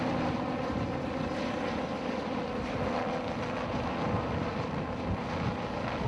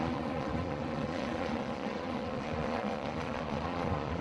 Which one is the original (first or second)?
first